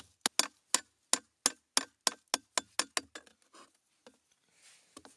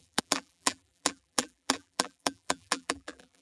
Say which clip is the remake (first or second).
second